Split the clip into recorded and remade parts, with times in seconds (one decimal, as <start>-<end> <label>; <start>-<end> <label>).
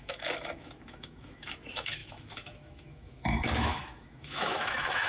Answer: 0.0-5.1 remade